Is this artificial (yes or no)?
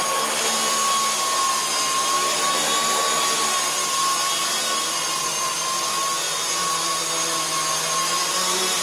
no